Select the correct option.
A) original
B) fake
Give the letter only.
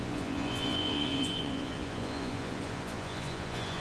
B